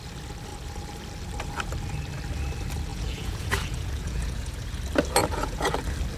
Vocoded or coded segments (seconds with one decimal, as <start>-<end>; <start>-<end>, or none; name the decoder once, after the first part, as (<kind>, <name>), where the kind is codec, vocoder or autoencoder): 2.9-4.6 (vocoder, Vocos); 5.2-5.8